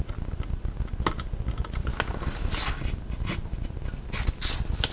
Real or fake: real